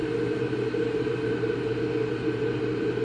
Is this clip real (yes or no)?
yes